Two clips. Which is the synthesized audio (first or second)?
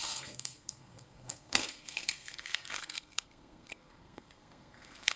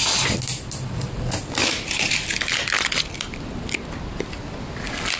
first